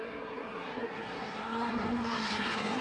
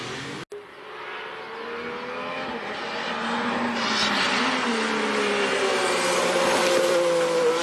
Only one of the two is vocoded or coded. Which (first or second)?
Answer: first